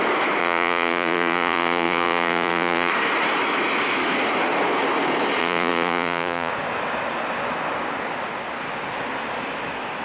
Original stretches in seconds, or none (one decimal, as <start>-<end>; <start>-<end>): 0.0-0.4; 2.9-5.4; 6.5-10.0